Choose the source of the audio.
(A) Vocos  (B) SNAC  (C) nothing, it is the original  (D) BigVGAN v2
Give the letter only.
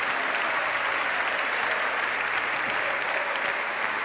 C